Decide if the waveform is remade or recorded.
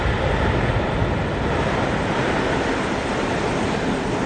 remade